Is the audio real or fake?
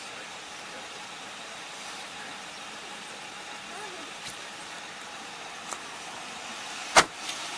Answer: fake